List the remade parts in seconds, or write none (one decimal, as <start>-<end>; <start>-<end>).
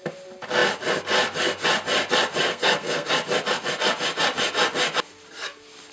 2.5-3.1